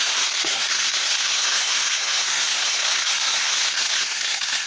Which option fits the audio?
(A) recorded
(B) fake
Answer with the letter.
B